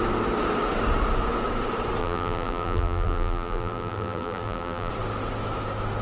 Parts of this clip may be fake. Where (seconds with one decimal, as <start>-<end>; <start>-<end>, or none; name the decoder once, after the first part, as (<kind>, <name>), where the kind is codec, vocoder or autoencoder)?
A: 2.0-4.9 (vocoder, BigVGAN v2)